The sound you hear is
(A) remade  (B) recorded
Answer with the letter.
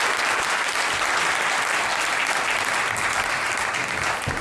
B